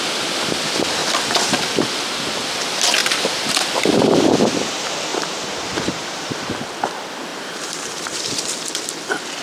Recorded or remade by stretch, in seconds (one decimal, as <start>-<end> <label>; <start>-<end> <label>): 0.0-5.1 recorded; 5.1-6.5 remade; 6.5-7.3 recorded; 7.3-8.2 remade; 8.2-9.4 recorded